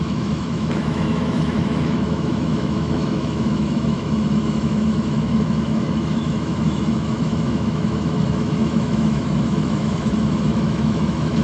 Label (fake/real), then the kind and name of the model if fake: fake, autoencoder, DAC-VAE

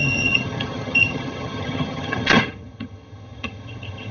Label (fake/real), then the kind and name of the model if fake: fake, vocoder, HiFi-GAN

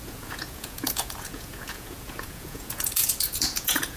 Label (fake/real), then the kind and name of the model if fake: fake, vocoder, Vocos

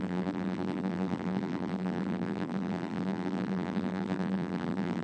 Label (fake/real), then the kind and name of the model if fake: fake, vocoder, BigVGAN v2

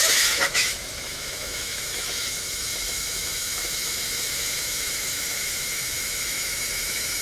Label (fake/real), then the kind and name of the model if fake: fake, autoencoder, DAC-VAE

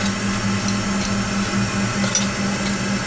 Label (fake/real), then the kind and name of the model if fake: real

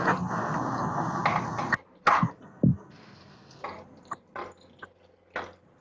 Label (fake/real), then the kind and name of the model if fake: real